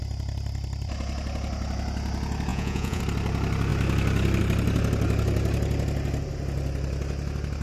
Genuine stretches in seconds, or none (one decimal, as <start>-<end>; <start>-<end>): 0.0-2.5; 3.0-7.6